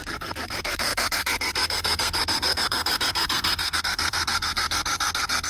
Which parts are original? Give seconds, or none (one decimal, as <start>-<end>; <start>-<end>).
none

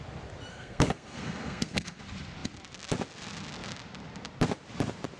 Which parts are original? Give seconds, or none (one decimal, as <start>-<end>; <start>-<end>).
0.0-0.5; 2.0-5.2